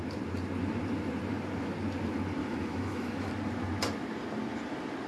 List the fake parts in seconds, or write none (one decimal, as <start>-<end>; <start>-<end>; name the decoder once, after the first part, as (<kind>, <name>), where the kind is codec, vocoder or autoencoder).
2.4-3.3 (autoencoder, DAC-VAE)